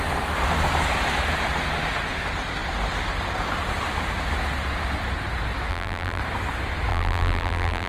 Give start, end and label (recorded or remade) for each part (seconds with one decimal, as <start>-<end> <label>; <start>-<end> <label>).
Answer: 0.0-5.7 recorded; 5.7-6.2 remade; 6.2-6.9 recorded; 6.9-7.9 remade